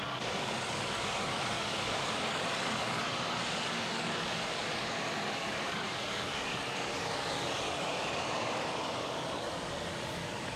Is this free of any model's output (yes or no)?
no